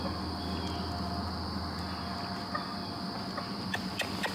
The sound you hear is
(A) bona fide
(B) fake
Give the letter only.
A